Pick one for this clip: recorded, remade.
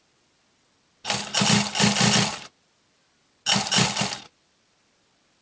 recorded